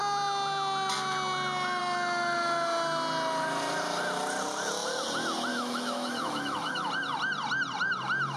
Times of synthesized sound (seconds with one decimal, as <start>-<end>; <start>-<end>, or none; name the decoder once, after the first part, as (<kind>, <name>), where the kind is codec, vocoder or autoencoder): 5.5-6.9 (autoencoder, DAC-VAE)